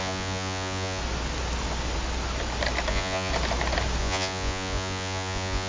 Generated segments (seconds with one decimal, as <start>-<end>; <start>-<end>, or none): 0.0-1.0; 2.9-3.3; 4.0-5.7